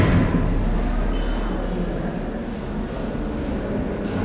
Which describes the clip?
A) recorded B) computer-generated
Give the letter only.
A